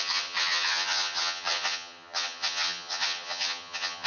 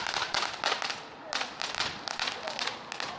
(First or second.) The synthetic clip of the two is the first